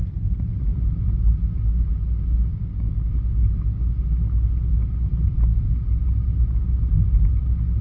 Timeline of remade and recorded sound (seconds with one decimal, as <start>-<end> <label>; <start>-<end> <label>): 0.0-2.5 recorded; 2.5-3.1 remade; 3.1-7.8 recorded